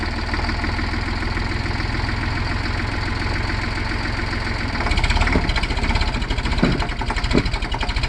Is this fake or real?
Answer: real